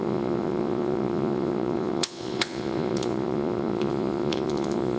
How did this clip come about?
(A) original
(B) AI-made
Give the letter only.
B